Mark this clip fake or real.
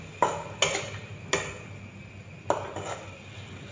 real